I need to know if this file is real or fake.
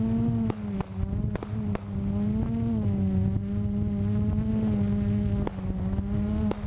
real